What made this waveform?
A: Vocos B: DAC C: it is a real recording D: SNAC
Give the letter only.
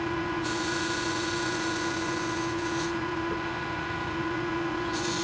A